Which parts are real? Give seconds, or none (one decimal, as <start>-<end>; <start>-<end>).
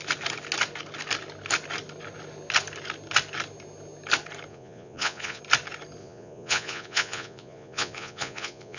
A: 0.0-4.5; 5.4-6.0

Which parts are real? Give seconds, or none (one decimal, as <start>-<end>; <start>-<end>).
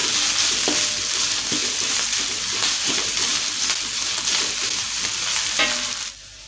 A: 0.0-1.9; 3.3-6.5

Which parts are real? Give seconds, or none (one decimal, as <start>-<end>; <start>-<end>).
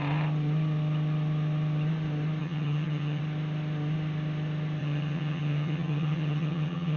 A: 0.0-2.4; 3.2-4.8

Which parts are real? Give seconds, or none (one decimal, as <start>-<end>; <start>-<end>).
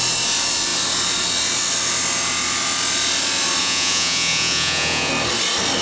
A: 0.0-3.6; 5.1-5.8